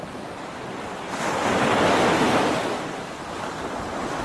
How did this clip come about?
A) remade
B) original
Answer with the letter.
B